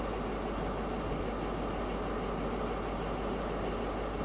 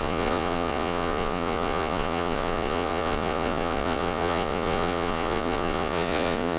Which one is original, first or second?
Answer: first